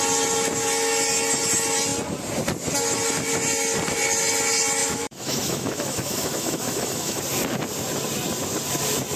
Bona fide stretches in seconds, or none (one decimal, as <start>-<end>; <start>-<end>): 0.0-4.8; 7.2-9.2